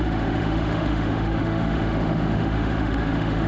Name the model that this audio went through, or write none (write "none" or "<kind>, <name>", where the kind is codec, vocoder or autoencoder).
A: autoencoder, DAC-VAE